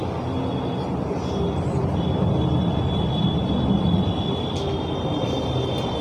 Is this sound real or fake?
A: real